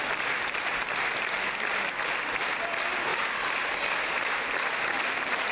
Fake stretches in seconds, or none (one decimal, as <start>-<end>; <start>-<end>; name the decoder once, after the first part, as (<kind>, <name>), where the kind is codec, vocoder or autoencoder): none